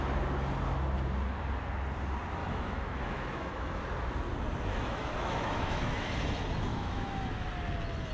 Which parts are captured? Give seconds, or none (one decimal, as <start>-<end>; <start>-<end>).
0.0-2.4; 3.8-4.7; 6.1-6.7; 7.5-8.1